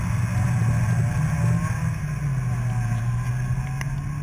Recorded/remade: recorded